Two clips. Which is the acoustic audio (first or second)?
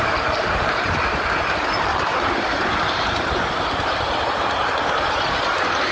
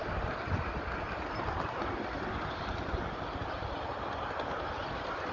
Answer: second